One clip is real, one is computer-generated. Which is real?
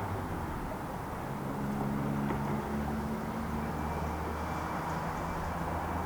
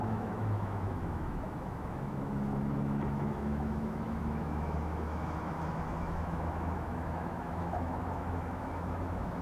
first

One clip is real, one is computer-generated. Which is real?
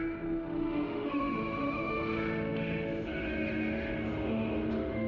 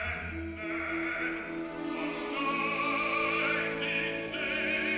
second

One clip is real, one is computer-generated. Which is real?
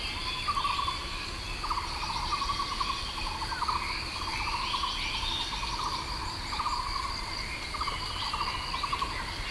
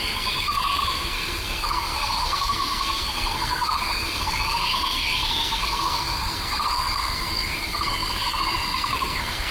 first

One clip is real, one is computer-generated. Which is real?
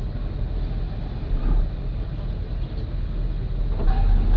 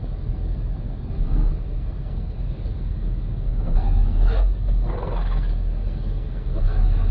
first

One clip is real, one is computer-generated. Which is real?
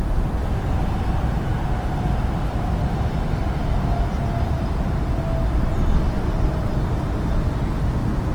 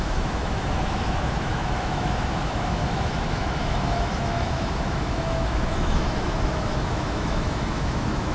first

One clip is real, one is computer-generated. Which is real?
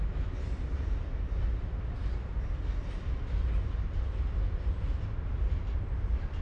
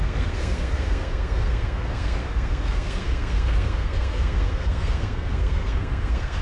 first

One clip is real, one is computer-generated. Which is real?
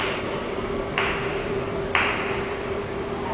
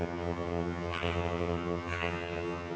first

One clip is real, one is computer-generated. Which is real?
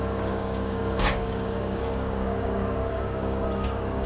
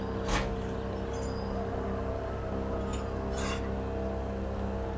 second